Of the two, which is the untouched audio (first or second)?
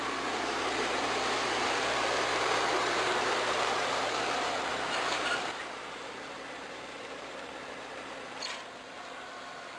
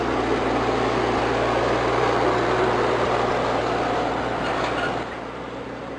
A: second